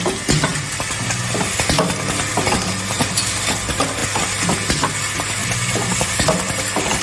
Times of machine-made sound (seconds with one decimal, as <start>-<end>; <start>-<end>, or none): 2.3-3.4; 5.4-6.2